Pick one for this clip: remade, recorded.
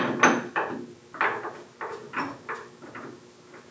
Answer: recorded